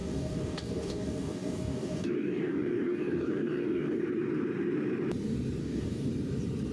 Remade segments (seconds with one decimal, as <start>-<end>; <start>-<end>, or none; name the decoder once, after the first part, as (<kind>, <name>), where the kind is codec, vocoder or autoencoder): 0.0-4.0 (codec, DAC); 5.6-6.1